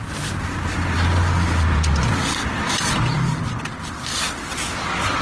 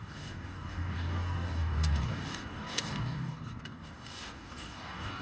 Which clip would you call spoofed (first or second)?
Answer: second